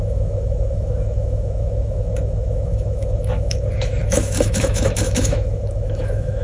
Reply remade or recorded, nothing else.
remade